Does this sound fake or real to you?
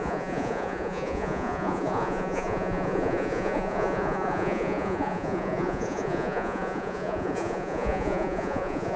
fake